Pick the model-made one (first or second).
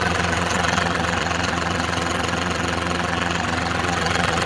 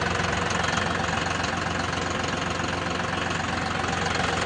first